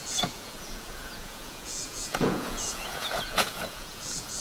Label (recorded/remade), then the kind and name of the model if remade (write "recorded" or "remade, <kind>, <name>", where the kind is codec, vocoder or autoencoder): remade, vocoder, Vocos